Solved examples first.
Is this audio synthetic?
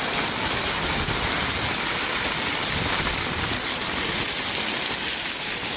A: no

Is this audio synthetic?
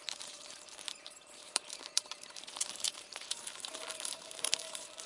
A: yes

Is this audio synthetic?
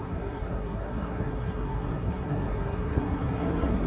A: yes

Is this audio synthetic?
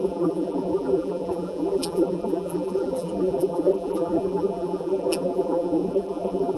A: yes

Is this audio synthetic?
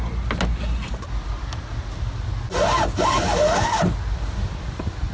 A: no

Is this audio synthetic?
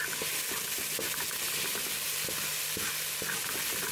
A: no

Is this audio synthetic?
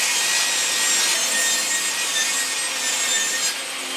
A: no